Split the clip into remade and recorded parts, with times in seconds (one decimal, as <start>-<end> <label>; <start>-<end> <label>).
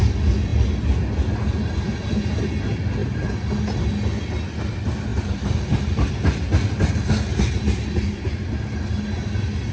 0.0-5.1 recorded; 5.1-6.1 remade; 6.1-7.3 recorded; 7.3-8.4 remade; 8.4-9.7 recorded